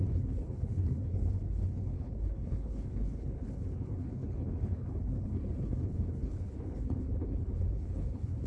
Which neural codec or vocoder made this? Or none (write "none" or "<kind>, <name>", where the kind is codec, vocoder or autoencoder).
codec, HILCodec